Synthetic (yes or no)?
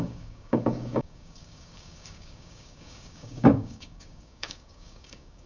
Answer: yes